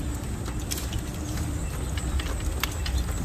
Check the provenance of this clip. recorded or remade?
recorded